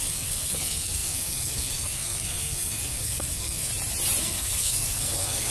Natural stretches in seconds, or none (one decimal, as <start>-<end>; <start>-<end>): 3.7-4.2